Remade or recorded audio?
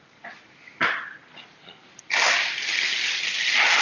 recorded